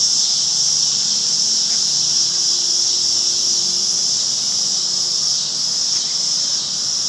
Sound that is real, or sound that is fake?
real